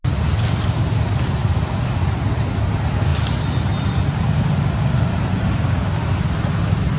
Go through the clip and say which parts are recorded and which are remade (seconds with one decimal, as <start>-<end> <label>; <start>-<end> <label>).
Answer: 0.0-7.0 recorded